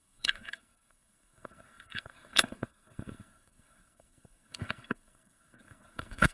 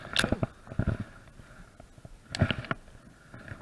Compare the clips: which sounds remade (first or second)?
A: first